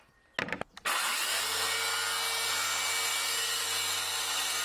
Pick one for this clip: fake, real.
real